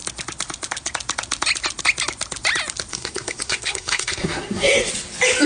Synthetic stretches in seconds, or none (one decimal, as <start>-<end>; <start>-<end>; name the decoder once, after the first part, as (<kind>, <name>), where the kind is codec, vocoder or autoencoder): 2.9-4.9 (codec, SNAC)